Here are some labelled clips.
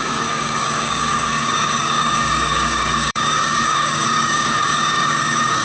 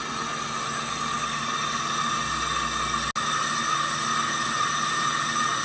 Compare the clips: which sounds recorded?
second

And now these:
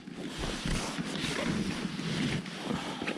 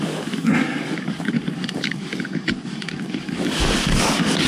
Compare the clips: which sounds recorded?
first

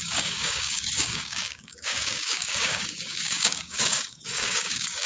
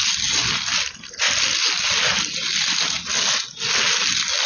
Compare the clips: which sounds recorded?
second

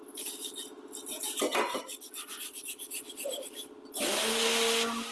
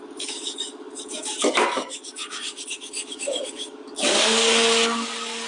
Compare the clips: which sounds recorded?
first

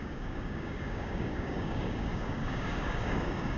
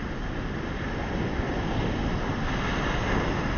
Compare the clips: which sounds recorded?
second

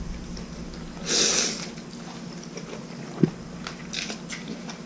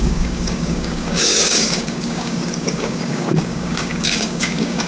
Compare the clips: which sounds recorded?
first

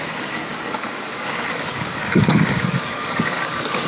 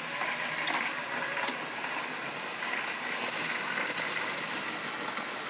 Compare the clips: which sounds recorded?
second